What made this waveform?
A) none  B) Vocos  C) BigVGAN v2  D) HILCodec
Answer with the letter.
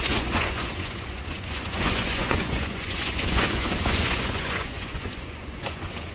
B